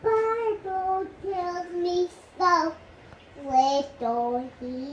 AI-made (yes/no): no